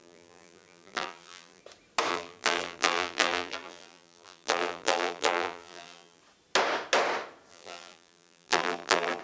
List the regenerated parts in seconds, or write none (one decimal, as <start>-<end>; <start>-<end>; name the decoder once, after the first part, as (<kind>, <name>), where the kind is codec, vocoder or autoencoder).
0.0-1.6 (vocoder, BigVGAN v2); 2.1-6.2; 7.5-9.2

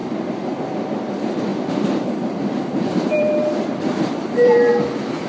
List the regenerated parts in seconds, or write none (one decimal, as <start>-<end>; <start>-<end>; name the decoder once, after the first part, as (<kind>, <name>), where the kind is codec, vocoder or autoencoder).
0.0-0.6 (vocoder, BigVGAN v2); 1.5-4.7

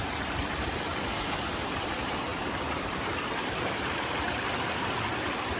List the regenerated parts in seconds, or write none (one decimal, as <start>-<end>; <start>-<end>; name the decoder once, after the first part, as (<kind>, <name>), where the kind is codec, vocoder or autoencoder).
0.9-1.9 (vocoder, BigVGAN v2); 2.3-3.8

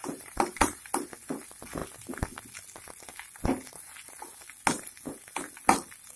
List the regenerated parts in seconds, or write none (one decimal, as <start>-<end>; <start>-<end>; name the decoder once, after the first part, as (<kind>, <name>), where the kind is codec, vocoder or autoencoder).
0.0-0.9 (vocoder, BigVGAN v2)

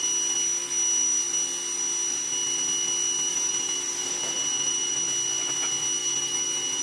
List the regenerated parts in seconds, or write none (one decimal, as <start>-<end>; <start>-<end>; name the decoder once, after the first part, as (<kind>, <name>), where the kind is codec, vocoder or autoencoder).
3.3-4.9 (vocoder, BigVGAN v2); 6.0-6.8

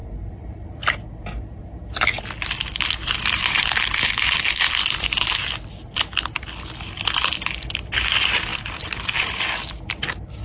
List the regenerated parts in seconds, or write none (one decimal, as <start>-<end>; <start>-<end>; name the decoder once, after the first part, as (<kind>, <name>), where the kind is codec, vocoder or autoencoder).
0.0-1.6 (vocoder, BigVGAN v2); 8.5-9.3

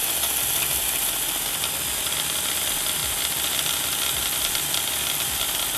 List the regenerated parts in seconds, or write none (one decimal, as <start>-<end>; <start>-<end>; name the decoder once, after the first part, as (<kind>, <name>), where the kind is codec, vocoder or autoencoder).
none

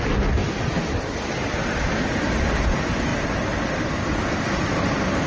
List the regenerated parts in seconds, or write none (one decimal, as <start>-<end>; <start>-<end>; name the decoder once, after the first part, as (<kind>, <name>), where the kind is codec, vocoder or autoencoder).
none